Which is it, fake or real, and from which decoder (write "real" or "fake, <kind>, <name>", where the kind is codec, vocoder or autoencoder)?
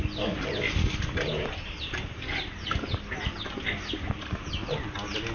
real